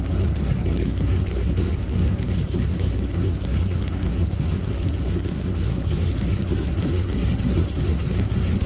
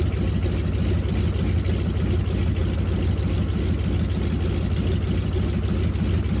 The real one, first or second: second